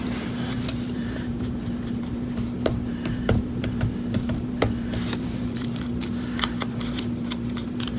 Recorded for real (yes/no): no